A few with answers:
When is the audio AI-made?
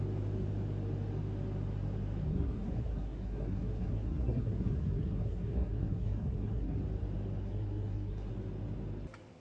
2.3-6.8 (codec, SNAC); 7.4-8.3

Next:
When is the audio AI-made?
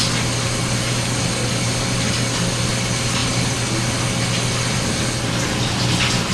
none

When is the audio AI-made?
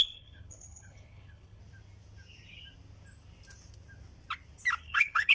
0.0-1.6 (codec, HILCodec); 4.8-5.3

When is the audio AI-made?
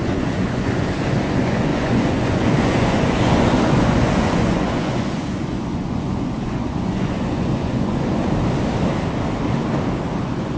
0.0-8.2 (vocoder, Vocos); 10.2-10.6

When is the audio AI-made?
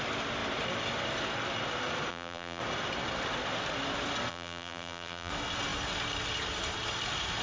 2.1-2.6 (vocoder, BigVGAN v2); 4.3-5.3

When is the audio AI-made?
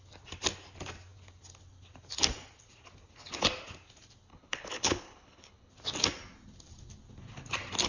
4.3-5.7 (codec, HILCodec)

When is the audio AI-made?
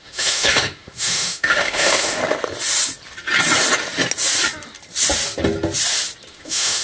0.0-2.2 (autoencoder, DAC-VAE); 6.3-6.8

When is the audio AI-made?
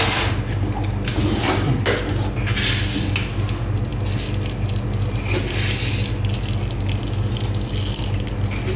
none